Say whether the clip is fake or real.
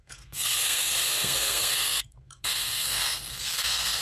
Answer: fake